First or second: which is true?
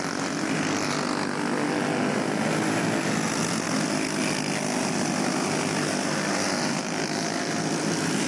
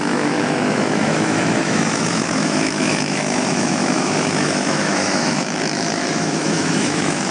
first